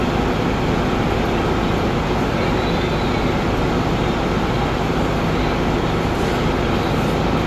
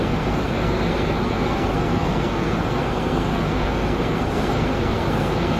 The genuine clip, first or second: first